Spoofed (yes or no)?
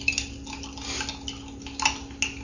no